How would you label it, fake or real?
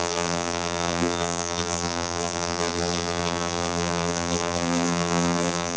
fake